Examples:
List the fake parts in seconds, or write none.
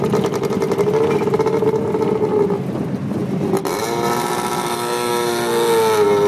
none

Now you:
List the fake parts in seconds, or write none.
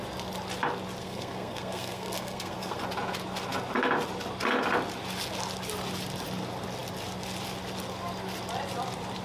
1.0-2.8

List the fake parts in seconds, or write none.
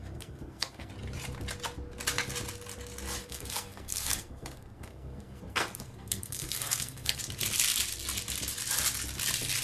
0.0-0.9; 3.2-7.2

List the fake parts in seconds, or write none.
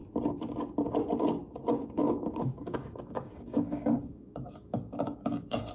1.5-5.7